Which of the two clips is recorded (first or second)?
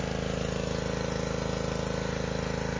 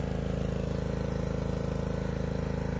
first